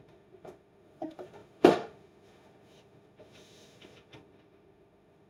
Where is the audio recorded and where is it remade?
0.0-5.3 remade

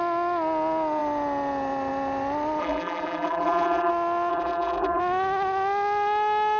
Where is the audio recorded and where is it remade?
0.0-2.6 recorded; 2.6-3.9 remade; 3.9-4.3 recorded; 4.3-5.0 remade; 5.0-6.6 recorded

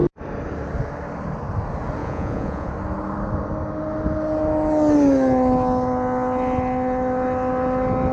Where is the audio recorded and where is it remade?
0.0-2.0 recorded; 2.0-2.7 remade; 2.7-8.1 recorded

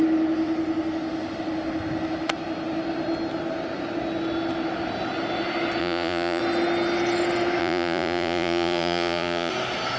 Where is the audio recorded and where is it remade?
0.0-5.8 recorded; 5.8-6.4 remade; 6.4-7.6 recorded; 7.6-9.5 remade; 9.5-10.0 recorded

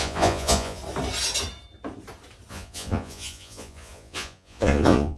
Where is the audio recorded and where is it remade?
0.0-0.8 remade; 0.8-2.5 recorded; 2.5-5.2 remade

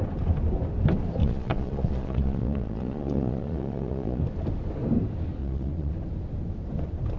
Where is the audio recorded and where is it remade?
0.0-1.2 recorded; 1.2-4.2 remade; 4.2-5.4 recorded; 5.4-5.9 remade; 5.9-7.2 recorded

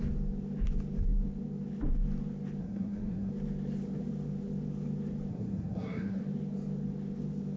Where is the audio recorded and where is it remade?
0.0-2.6 recorded; 2.6-3.3 remade; 3.3-5.3 recorded; 5.3-6.2 remade; 6.2-7.6 recorded

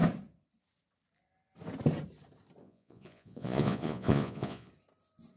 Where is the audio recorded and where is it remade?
0.0-2.6 recorded; 2.6-4.7 remade; 4.7-5.4 recorded